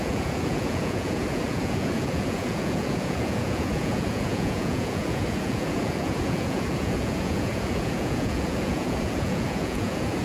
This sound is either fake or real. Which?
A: fake